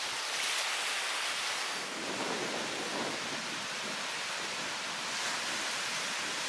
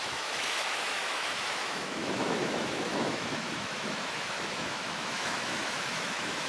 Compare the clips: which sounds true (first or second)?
first